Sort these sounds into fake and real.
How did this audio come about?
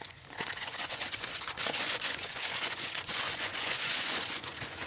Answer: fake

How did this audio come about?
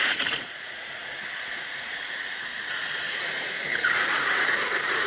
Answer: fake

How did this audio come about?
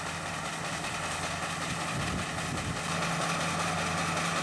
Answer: real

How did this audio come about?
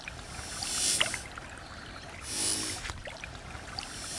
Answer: real